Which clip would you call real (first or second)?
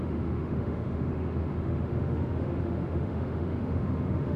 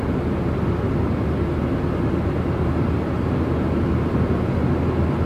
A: second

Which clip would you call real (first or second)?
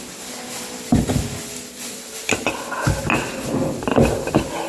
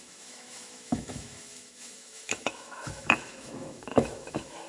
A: first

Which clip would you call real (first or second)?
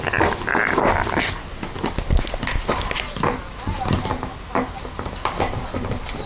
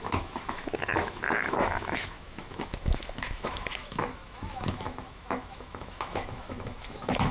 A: first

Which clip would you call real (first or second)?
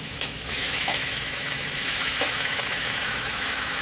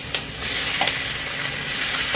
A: second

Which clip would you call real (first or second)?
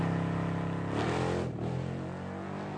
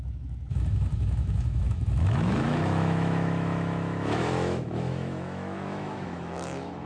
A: first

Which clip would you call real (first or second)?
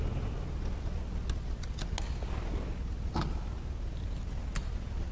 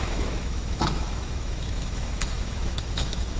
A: first